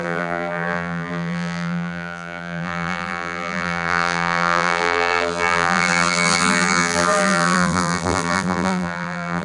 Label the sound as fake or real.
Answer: fake